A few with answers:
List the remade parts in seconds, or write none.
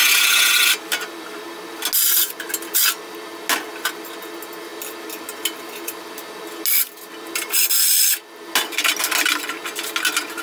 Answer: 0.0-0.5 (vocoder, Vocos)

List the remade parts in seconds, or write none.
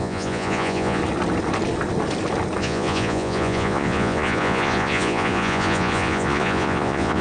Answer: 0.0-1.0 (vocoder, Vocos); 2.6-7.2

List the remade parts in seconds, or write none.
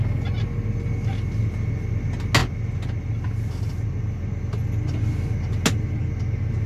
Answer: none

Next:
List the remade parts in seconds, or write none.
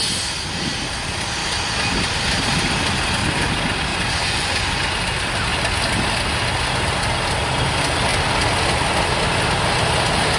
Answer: 3.9-4.9 (vocoder, Vocos)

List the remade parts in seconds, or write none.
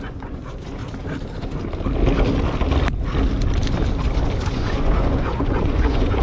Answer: 0.0-0.8 (vocoder, Vocos); 4.5-6.2